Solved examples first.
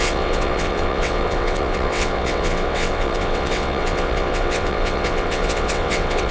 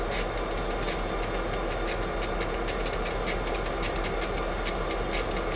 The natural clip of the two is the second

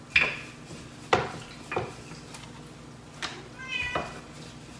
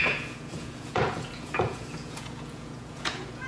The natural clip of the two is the first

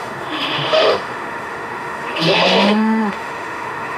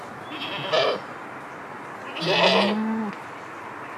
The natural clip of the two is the second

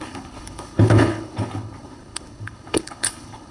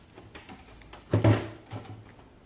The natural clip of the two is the second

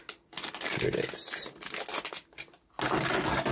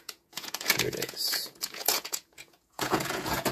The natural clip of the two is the first